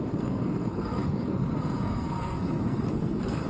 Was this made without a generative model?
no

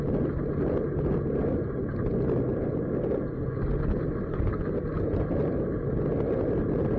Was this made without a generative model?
yes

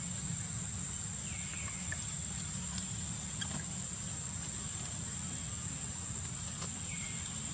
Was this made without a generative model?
yes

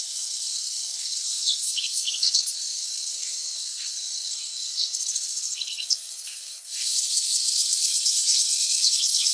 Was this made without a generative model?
no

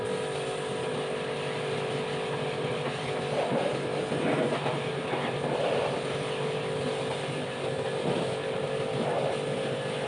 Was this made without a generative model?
yes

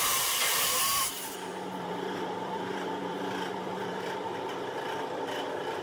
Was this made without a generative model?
no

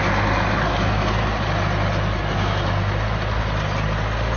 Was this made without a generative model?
yes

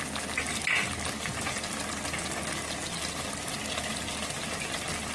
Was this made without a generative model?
yes